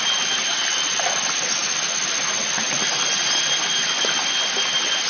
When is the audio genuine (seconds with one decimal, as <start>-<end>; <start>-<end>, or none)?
0.0-5.1